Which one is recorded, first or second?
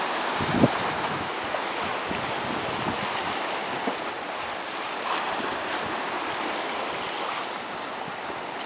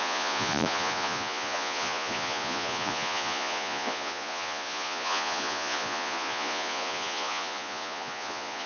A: first